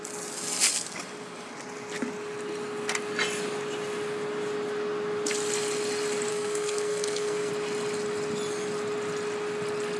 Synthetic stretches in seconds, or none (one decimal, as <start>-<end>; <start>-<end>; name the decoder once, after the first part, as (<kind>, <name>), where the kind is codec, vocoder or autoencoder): 6.3-7.5 (codec, SNAC)